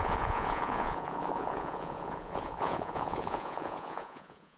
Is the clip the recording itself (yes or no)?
no